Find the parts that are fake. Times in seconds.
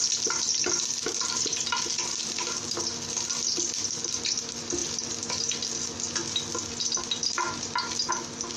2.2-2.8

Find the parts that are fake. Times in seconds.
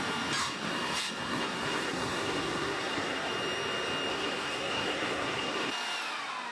0.4-3.3; 4.1-5.7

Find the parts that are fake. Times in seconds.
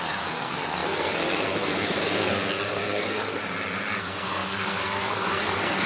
0.0-3.4; 4.0-5.9